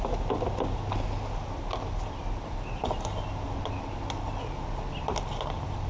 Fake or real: real